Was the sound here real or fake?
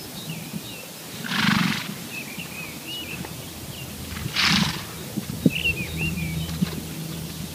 real